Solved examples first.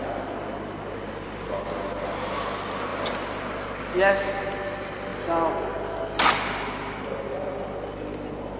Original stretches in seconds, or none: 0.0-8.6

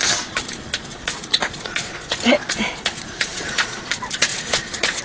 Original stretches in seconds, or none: 0.0-0.9; 3.9-4.3

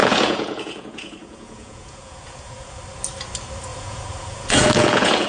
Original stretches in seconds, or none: 2.8-3.7